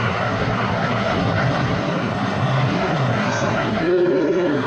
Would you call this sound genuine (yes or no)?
no